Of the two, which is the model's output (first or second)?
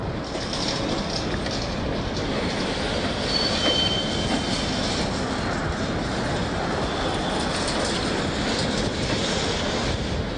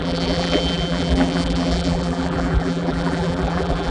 second